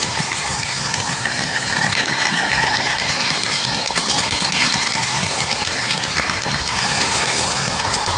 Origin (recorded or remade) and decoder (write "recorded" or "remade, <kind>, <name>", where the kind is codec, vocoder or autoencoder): remade, codec, SNAC